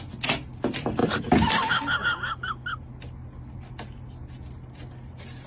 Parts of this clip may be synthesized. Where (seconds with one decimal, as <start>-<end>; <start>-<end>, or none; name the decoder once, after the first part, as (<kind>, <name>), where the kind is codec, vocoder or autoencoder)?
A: none